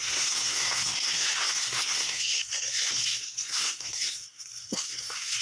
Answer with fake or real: fake